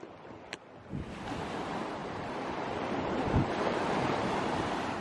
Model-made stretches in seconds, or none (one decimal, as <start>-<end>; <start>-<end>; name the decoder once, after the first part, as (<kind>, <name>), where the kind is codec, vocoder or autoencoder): 2.0-5.0 (vocoder, BigVGAN v2)